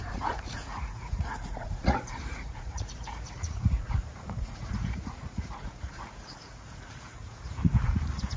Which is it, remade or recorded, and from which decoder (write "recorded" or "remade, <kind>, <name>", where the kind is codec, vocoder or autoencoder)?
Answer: remade, vocoder, Vocos